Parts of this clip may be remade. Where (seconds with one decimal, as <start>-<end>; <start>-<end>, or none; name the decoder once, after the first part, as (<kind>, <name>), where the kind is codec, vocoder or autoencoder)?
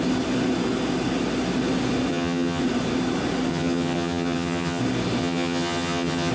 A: 2.1-2.6 (vocoder, HiFi-GAN); 3.5-4.8; 5.2-6.3